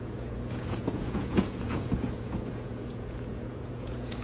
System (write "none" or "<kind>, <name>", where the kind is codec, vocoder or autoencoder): vocoder, Vocos